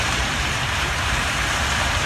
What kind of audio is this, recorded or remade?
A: remade